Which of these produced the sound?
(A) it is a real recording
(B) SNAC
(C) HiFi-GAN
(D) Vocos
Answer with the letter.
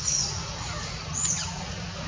D